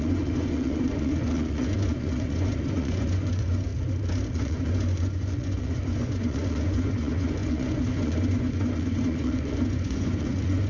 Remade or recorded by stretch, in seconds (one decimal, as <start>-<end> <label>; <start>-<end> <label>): 0.0-3.7 remade; 3.7-4.3 recorded; 4.3-10.7 remade